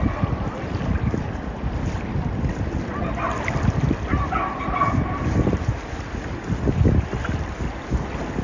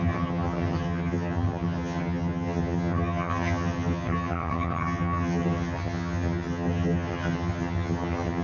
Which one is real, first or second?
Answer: first